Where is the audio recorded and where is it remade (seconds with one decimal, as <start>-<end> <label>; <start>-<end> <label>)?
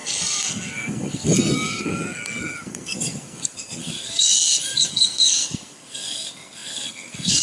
0.0-7.4 remade